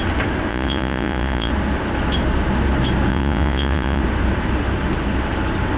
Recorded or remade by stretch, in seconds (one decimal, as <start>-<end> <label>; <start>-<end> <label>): 0.0-0.5 recorded; 0.5-1.5 remade; 1.5-3.1 recorded; 3.1-4.0 remade; 4.0-5.8 recorded